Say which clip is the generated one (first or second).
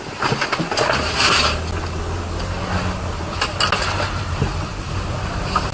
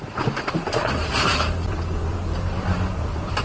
second